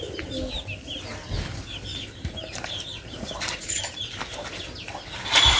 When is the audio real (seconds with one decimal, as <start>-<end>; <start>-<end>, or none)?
0.0-1.9; 3.9-5.6